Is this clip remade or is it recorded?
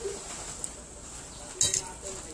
recorded